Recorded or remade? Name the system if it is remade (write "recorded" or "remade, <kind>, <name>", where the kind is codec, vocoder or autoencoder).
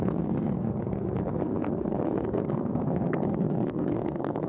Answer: remade, codec, SNAC